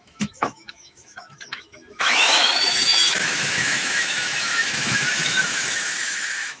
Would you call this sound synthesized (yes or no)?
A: yes